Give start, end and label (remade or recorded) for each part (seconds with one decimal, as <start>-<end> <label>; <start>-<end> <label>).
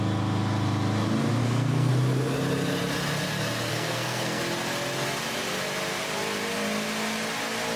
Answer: 0.0-1.4 recorded; 1.4-1.9 remade; 1.9-3.7 recorded; 3.7-4.4 remade; 4.4-7.8 recorded